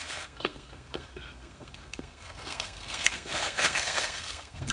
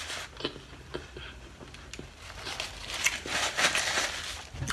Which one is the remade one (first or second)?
first